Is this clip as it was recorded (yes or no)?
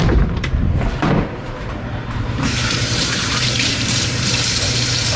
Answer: no